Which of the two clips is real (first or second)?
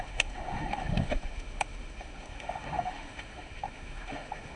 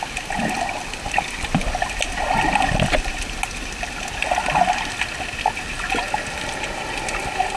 second